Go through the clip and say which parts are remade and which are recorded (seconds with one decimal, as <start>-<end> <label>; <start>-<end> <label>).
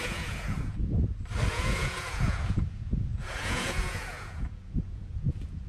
0.0-0.8 remade; 0.8-1.5 recorded; 1.5-5.7 remade